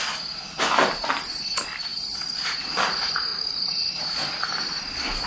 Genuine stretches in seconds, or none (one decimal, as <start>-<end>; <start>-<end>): 0.0-3.3; 3.9-5.3